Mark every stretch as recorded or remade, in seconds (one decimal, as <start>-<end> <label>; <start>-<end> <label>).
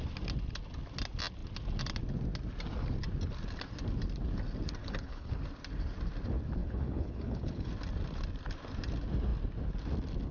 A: 0.0-4.8 recorded; 4.8-5.4 remade; 5.4-6.6 recorded; 6.6-7.7 remade; 7.7-10.3 recorded